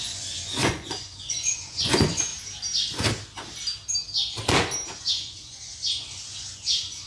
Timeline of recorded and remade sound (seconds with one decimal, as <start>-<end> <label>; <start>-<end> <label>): 0.0-2.3 remade; 2.3-5.0 recorded; 5.0-7.1 remade